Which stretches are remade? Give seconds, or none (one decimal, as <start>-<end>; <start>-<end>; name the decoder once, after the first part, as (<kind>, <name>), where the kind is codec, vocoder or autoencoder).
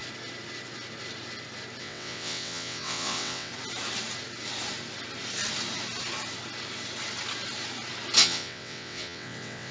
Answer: 1.8-3.5 (vocoder, WaveNeXt); 8.2-9.7